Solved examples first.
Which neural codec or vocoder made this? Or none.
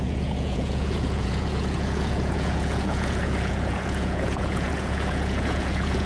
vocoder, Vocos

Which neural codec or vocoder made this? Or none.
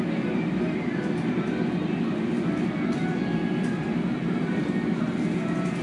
none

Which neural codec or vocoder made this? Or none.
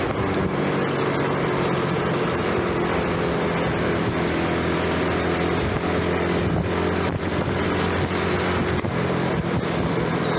none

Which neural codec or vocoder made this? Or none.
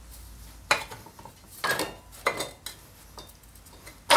none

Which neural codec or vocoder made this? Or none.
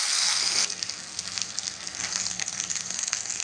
codec, SNAC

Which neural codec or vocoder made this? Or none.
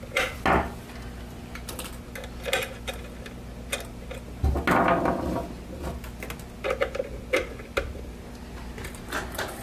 none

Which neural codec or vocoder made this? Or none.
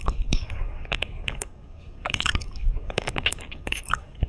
codec, DAC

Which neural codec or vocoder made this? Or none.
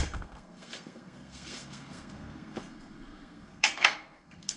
codec, SNAC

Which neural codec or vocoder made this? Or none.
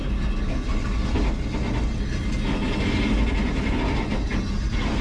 none